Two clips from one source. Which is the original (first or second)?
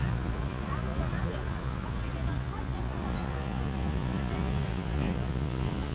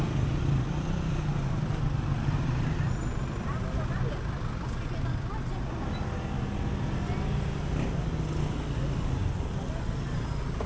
second